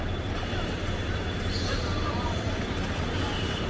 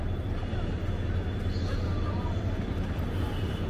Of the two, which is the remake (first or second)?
first